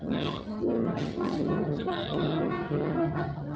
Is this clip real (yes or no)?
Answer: no